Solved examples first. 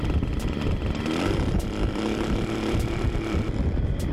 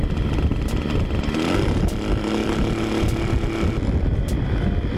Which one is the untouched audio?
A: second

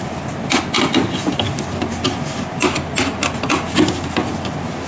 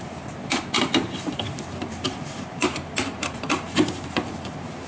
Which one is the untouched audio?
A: first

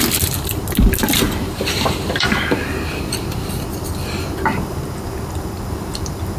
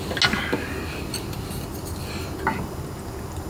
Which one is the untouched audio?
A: second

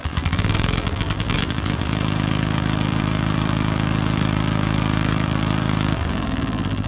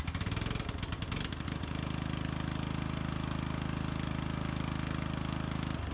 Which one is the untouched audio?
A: second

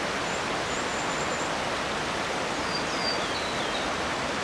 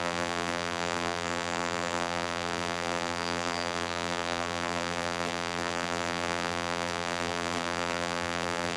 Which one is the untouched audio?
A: first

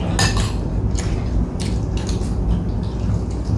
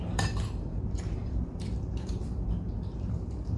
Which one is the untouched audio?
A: first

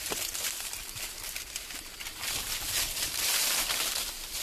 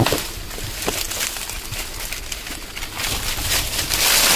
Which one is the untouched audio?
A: second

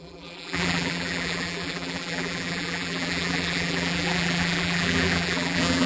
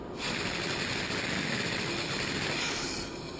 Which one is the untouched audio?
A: second